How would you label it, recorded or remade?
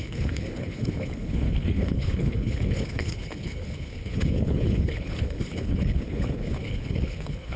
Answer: remade